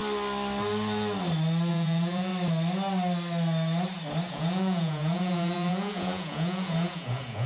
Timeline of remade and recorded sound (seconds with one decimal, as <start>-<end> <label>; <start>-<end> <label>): 0.0-1.7 recorded; 1.7-2.3 remade; 2.3-4.3 recorded; 4.3-7.5 remade